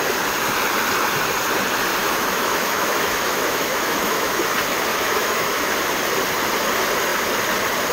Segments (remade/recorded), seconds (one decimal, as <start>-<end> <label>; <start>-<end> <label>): 0.0-2.0 recorded; 2.0-4.4 remade; 4.4-4.9 recorded; 4.9-5.7 remade; 5.7-7.9 recorded